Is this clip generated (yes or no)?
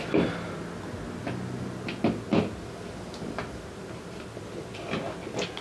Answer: no